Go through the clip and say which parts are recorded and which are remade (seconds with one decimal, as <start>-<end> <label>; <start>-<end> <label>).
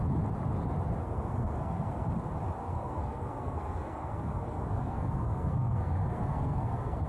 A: 0.0-1.0 recorded; 1.0-2.1 remade; 2.1-2.6 recorded; 2.6-7.1 remade